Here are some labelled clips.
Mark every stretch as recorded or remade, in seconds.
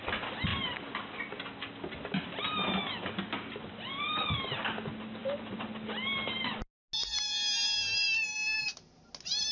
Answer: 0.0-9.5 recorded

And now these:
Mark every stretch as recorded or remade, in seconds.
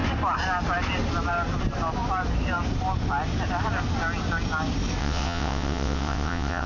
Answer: 0.0-5.0 recorded; 5.0-6.7 remade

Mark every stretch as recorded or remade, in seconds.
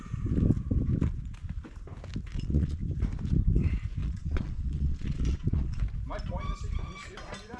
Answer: 0.0-2.3 recorded; 2.3-2.8 remade; 2.8-4.0 recorded; 4.0-5.8 remade; 5.8-7.6 recorded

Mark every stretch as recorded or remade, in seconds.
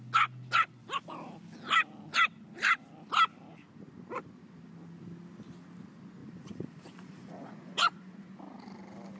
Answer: 0.0-6.2 recorded; 6.2-8.3 remade; 8.3-9.2 recorded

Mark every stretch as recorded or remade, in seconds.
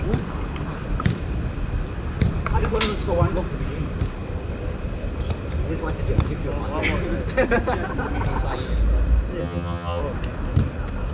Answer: 0.0-9.4 recorded; 9.4-10.0 remade; 10.0-11.1 recorded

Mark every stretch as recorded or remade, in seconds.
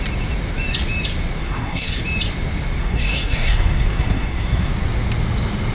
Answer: 0.0-1.4 recorded; 1.4-2.0 remade; 2.0-2.8 recorded; 2.8-4.7 remade; 4.7-5.7 recorded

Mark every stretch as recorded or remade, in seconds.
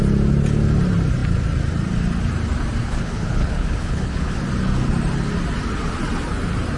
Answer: 0.0-2.8 recorded; 2.8-4.4 remade; 4.4-6.8 recorded